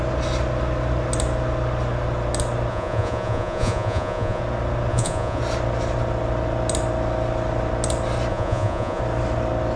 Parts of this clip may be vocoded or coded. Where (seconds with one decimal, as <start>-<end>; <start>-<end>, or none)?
2.7-4.4; 4.9-5.4; 8.3-9.0